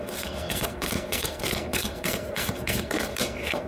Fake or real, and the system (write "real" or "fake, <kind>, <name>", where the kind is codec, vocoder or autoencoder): fake, codec, SNAC